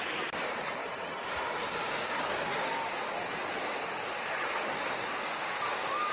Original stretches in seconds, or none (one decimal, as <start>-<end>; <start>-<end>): 0.0-1.6; 2.8-3.6